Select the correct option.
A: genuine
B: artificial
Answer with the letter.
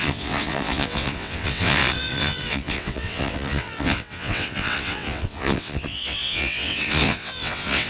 B